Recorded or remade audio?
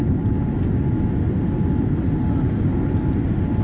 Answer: recorded